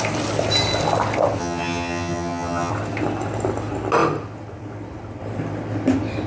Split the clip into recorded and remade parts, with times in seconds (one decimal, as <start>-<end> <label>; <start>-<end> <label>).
0.0-1.4 recorded; 1.4-2.7 remade; 2.7-6.3 recorded